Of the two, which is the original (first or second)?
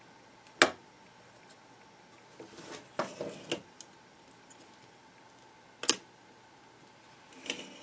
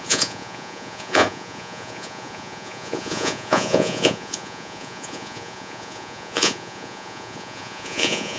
first